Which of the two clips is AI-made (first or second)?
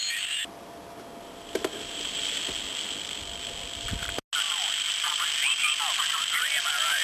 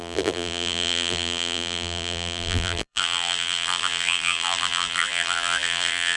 second